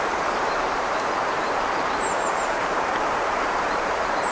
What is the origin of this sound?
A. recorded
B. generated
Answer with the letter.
B